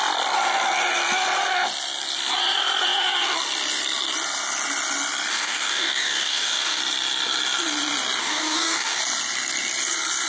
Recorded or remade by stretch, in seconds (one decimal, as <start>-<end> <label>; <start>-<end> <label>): 0.0-5.3 recorded; 5.3-6.8 remade; 6.8-8.2 recorded; 8.2-9.0 remade; 9.0-10.3 recorded